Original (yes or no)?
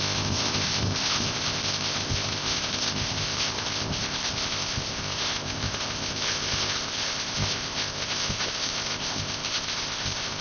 no